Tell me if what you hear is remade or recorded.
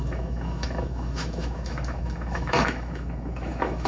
remade